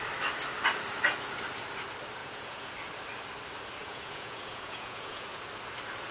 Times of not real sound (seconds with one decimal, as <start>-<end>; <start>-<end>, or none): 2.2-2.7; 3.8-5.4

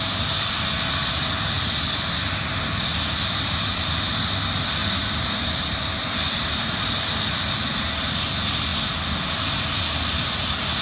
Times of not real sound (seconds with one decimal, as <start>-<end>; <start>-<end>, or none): none

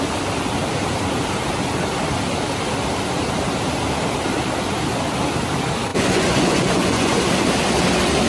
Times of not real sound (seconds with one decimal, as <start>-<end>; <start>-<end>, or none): 5.9-7.2